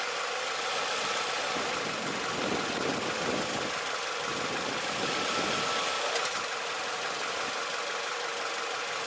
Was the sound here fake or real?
real